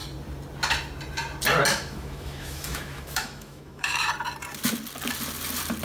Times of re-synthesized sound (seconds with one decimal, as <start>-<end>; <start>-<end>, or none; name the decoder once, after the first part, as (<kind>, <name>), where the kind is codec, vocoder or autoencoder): 1.7-4.1 (autoencoder, DAC-VAE)